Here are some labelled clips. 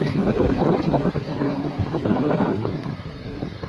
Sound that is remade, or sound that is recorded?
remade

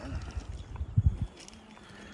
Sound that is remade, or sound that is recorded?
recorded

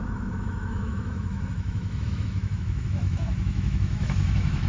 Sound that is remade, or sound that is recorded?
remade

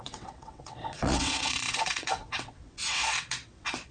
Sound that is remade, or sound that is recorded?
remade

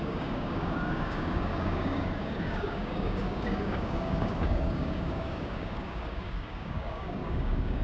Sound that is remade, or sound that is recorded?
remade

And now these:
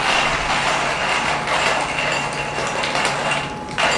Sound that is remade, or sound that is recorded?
recorded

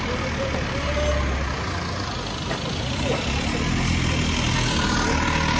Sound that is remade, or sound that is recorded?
recorded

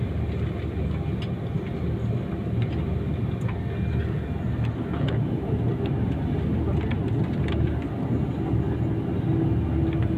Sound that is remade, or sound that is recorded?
recorded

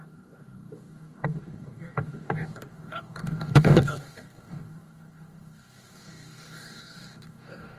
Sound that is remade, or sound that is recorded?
remade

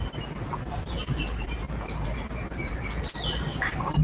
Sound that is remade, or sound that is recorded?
recorded